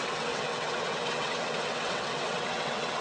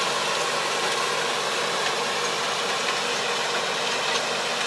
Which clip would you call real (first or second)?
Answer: second